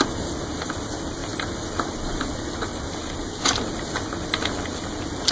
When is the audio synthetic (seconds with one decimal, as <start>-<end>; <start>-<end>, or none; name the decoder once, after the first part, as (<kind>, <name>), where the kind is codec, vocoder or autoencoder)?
none